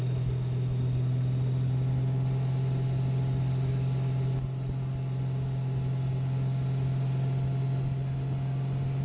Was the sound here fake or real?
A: real